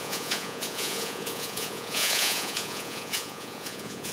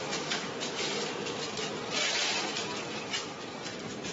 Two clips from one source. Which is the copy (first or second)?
first